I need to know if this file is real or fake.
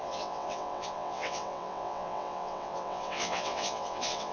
fake